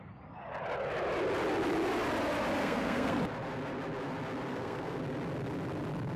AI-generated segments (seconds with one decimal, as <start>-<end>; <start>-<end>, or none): 2.6-3.2; 4.5-5.0